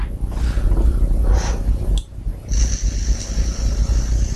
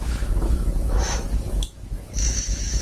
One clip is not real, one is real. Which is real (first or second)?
first